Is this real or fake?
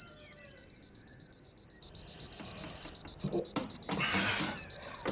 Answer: real